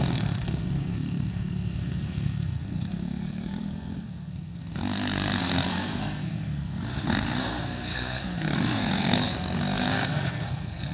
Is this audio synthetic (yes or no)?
yes